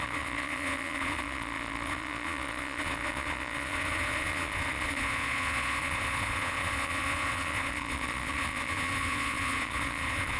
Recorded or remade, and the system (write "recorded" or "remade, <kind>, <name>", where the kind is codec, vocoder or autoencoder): remade, vocoder, Vocos